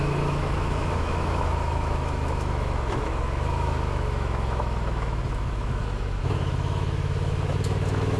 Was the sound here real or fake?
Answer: fake